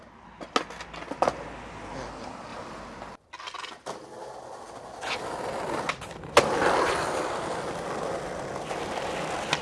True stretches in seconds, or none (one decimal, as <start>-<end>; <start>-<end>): 0.0-9.6